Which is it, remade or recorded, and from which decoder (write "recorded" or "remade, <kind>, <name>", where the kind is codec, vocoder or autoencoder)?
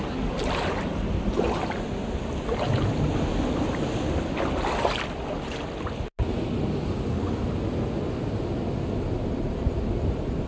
recorded